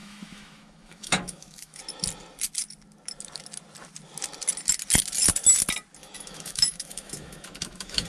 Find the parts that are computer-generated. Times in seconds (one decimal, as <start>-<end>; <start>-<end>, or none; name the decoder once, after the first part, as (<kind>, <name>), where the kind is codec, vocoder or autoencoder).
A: 0.0-1.8 (autoencoder, DAC-VAE); 6.0-8.1